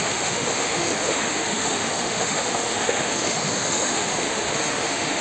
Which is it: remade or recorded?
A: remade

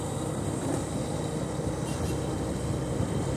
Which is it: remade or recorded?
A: recorded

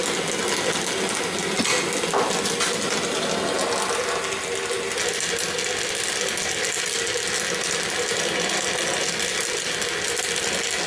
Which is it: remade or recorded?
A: recorded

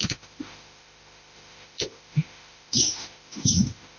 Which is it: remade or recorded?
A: remade